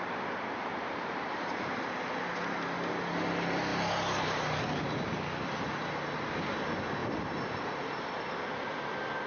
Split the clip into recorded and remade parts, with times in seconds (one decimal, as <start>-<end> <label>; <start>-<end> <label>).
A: 0.0-0.7 recorded; 0.7-1.8 remade; 1.8-7.0 recorded; 7.0-8.1 remade; 8.1-9.3 recorded